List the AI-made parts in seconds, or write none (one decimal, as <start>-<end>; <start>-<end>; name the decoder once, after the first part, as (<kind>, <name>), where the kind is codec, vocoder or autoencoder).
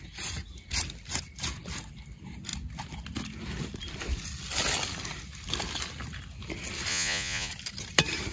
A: 6.9-7.5 (vocoder, Vocos)